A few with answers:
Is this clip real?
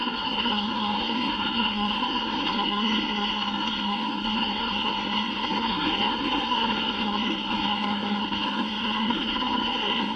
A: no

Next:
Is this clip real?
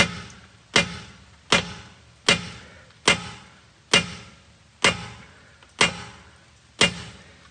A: yes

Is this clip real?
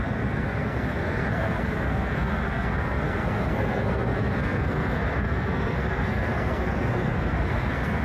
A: no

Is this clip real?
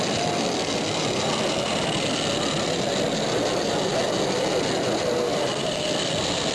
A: yes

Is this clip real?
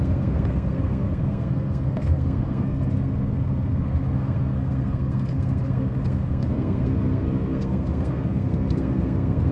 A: no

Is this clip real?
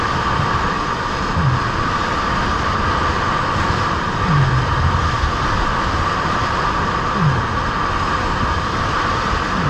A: yes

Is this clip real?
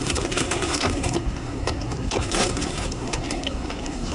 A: no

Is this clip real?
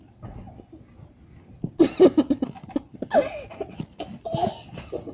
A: yes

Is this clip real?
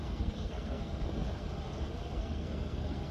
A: no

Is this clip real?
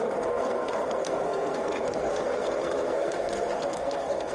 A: no